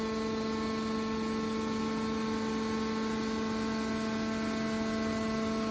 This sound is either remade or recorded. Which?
recorded